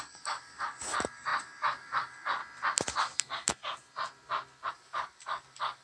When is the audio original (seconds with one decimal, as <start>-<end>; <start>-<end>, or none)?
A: 2.4-4.7